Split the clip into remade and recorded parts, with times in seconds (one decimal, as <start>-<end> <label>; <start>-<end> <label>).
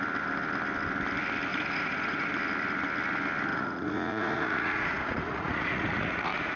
0.0-1.5 recorded; 1.5-2.3 remade; 2.3-3.5 recorded; 3.5-6.6 remade